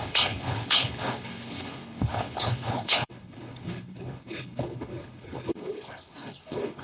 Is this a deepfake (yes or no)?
yes